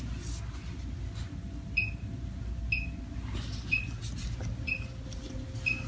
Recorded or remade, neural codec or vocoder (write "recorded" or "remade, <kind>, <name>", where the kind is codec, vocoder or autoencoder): recorded